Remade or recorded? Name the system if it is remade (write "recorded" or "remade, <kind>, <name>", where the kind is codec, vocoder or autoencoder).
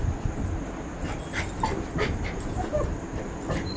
recorded